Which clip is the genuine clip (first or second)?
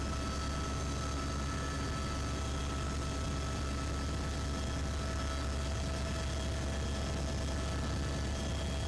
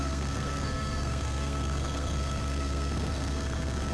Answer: first